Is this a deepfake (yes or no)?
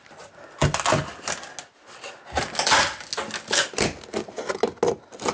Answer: no